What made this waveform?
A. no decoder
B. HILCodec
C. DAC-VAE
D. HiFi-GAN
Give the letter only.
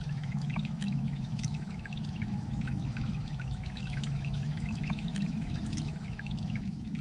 C